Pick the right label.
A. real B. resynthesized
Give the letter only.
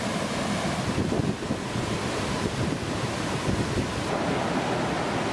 A